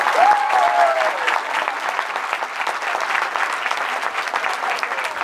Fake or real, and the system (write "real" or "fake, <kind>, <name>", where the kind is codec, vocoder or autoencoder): real